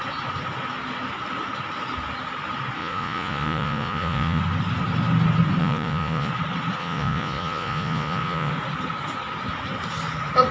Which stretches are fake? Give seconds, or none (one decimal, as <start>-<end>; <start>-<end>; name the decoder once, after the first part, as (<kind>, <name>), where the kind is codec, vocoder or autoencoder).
2.8-4.4 (vocoder, Vocos); 5.6-6.3; 6.8-8.5